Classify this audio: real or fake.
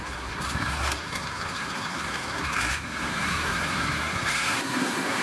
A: fake